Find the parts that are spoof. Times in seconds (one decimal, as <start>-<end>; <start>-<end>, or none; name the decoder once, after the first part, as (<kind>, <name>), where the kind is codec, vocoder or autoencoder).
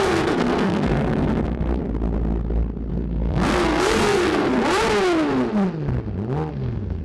0.0-1.8 (codec, SNAC); 2.9-4.6; 6.5-7.0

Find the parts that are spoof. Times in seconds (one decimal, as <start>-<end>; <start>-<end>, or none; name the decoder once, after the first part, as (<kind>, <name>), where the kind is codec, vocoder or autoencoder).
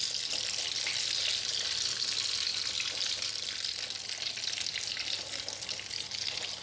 none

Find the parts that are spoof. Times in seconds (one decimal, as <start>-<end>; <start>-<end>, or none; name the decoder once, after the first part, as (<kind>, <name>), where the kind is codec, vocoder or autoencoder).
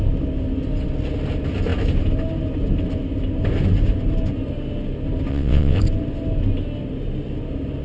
5.3-5.8 (vocoder, WaveNeXt)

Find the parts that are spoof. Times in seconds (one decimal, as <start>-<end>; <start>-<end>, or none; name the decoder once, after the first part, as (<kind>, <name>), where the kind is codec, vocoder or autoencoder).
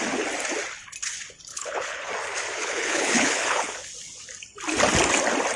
1.5-2.1 (codec, HILCodec); 2.6-3.9